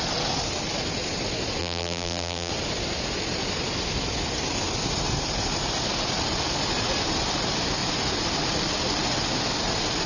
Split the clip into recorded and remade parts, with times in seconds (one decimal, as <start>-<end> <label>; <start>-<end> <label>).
0.0-1.6 recorded; 1.6-2.5 remade; 2.5-10.1 recorded